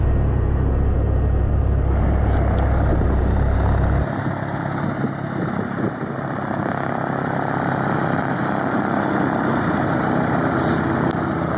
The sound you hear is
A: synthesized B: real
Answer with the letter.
B